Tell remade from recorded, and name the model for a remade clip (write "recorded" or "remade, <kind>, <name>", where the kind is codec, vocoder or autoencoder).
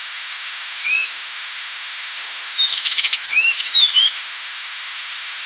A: remade, autoencoder, DAC-VAE